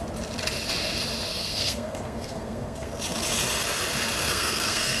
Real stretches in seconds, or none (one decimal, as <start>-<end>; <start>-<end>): 0.0-1.3; 2.9-4.2